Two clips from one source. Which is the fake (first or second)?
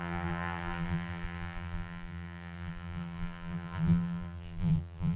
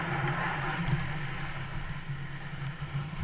first